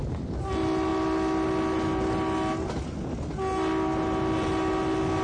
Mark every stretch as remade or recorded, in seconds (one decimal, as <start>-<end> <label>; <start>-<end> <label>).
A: 0.0-5.2 recorded